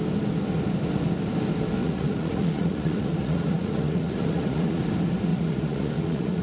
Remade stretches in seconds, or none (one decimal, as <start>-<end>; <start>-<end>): 1.8-4.8; 5.3-6.4